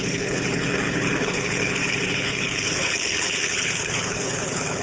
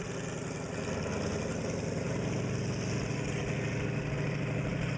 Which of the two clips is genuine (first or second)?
second